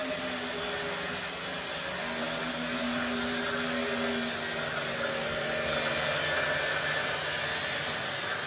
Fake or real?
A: real